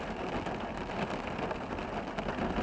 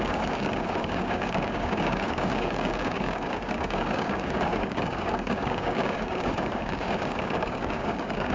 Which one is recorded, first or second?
first